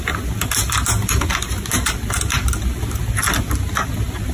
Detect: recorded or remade recorded